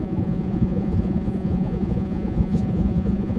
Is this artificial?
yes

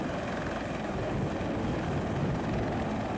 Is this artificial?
no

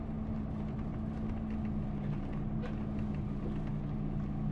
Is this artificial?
no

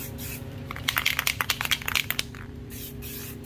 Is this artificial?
yes